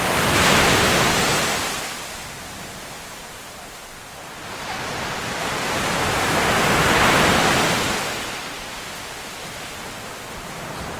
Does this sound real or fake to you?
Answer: real